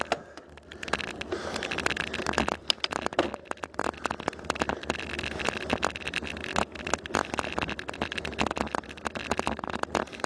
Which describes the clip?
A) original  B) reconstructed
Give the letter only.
A